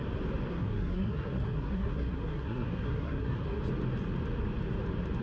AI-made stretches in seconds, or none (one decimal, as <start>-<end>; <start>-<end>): 0.5-3.6